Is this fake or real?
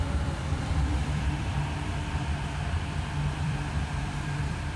fake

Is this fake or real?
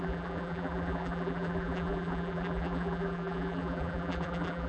fake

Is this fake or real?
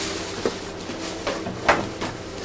real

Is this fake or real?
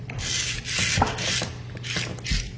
real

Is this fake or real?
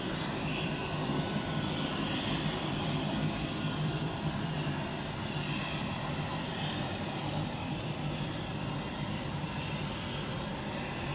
fake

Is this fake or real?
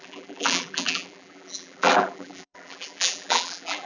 fake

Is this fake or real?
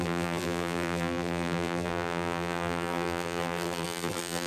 fake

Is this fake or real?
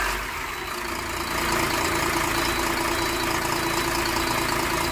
real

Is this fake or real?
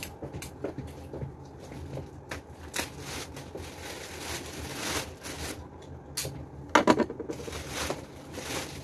real